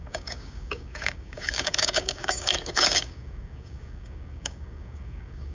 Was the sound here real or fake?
fake